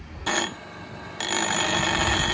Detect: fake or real real